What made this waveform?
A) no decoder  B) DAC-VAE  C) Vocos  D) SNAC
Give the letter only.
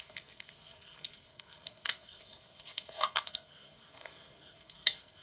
D